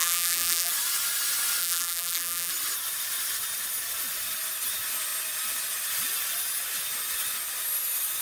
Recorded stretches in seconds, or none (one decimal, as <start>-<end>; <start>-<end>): 0.7-1.6; 2.5-8.2